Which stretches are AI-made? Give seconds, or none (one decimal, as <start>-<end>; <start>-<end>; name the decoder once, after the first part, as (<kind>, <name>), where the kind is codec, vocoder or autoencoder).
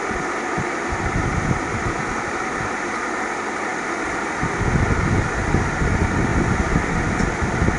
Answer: 3.7-4.3 (vocoder, BigVGAN v2); 6.3-7.2